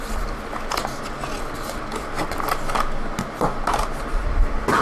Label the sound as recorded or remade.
recorded